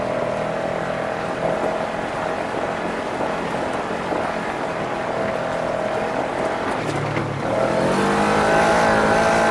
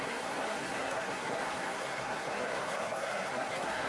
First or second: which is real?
first